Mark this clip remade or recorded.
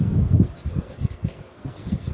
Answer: remade